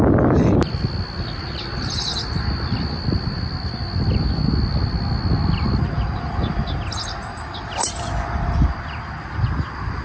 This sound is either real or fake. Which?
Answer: real